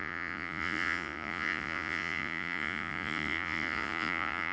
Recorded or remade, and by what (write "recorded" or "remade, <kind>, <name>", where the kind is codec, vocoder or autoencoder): remade, vocoder, Vocos